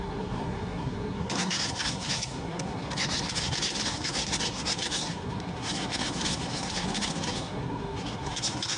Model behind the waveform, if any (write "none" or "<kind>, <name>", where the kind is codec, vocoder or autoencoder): codec, SNAC